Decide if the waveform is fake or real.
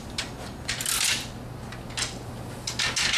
real